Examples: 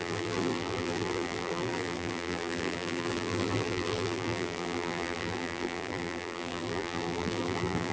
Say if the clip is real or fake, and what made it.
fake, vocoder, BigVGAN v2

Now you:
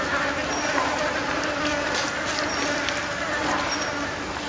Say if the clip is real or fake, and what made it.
real